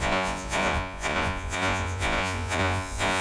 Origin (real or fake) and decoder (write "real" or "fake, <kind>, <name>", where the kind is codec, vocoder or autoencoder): fake, vocoder, Vocos